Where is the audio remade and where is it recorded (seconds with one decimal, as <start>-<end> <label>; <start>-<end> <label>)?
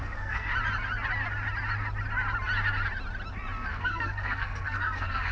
0.0-0.5 remade; 0.5-3.7 recorded; 3.7-5.3 remade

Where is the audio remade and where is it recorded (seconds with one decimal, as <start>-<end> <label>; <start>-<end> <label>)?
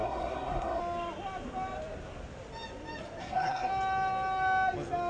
0.0-0.8 remade; 0.8-3.2 recorded; 3.2-3.7 remade; 3.7-5.1 recorded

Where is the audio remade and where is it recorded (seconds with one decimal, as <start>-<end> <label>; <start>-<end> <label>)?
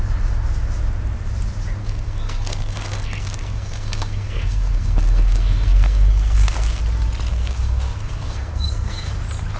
0.0-1.8 recorded; 1.8-6.8 remade; 6.8-7.3 recorded; 7.3-9.1 remade; 9.1-9.6 recorded